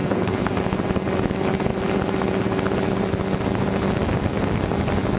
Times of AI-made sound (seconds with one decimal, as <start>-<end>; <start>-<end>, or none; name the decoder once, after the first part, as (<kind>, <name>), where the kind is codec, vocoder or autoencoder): 0.0-0.6 (codec, SNAC)